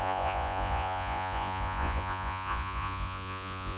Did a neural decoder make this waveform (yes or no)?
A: yes